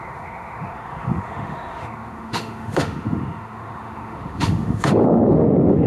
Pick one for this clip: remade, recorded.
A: remade